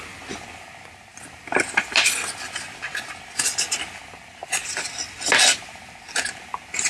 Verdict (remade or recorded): recorded